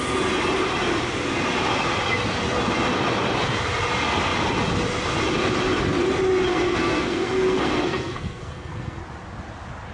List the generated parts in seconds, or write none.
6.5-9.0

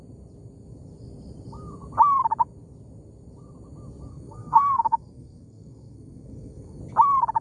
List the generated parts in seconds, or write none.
4.1-6.8

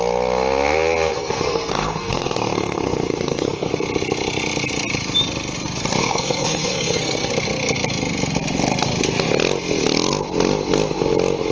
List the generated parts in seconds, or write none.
1.1-3.7; 6.0-7.3

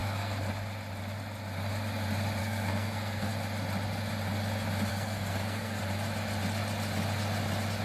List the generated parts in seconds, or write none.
0.0-0.5; 2.4-3.3; 4.9-5.8

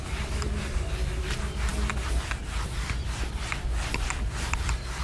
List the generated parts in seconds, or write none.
none

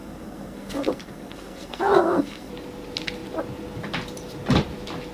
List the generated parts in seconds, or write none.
0.0-2.5

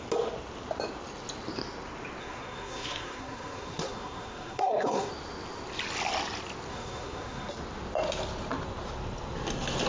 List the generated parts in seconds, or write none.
2.2-5.1; 6.7-7.5